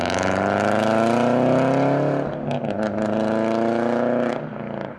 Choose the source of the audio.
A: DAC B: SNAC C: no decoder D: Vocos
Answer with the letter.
C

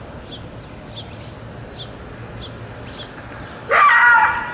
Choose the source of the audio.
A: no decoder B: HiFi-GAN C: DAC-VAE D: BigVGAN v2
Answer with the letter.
A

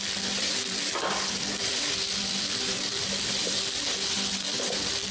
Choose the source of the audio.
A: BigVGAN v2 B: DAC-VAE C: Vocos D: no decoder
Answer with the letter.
A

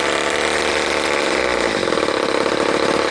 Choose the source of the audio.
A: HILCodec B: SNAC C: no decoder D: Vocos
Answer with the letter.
C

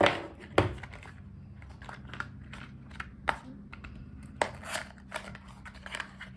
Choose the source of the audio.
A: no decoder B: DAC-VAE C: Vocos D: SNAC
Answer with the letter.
A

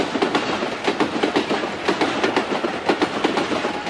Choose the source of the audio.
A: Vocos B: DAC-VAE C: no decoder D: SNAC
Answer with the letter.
C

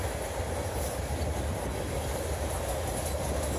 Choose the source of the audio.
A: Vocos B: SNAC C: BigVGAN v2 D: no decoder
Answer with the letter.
D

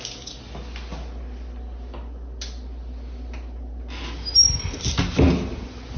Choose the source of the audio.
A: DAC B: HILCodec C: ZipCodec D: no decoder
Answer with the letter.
D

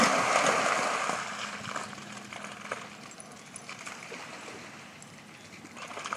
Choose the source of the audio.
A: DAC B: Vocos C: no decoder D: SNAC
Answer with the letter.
C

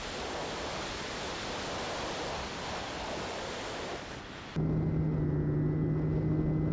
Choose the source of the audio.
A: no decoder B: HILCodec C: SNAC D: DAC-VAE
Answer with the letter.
A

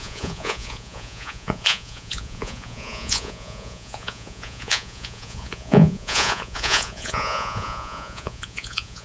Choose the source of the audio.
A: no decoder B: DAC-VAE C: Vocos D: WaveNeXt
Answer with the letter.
C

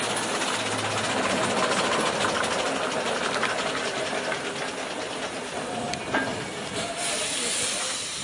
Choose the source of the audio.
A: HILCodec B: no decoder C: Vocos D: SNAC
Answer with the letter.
B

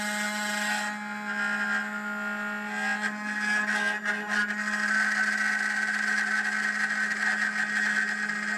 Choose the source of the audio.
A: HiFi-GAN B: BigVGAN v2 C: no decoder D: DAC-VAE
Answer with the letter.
C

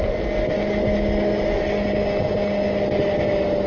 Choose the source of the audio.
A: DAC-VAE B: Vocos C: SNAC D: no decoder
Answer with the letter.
D